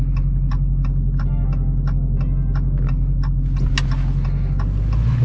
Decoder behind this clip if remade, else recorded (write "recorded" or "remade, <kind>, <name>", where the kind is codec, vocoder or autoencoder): recorded